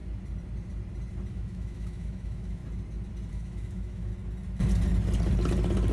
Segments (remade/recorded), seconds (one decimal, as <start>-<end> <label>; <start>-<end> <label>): 0.0-1.3 recorded; 1.3-2.6 remade; 2.6-3.3 recorded; 3.3-4.1 remade; 4.1-5.9 recorded